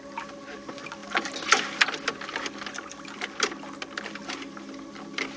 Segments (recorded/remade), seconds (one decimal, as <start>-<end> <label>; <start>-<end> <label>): 0.0-5.4 recorded